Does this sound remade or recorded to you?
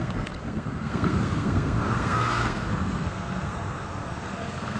remade